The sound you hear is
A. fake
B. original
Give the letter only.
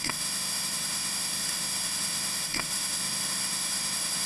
A